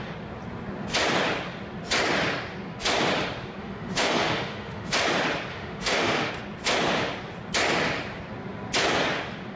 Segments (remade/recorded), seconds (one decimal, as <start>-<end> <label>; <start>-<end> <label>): 0.0-3.6 recorded; 3.6-4.9 remade; 4.9-5.5 recorded; 5.5-6.3 remade; 6.3-9.6 recorded